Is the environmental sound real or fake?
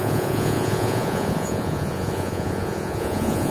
fake